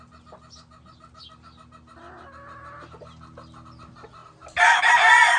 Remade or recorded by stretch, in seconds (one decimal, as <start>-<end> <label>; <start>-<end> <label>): 0.0-5.4 recorded